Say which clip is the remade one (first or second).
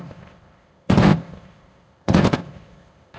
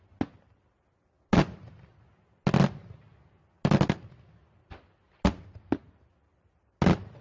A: first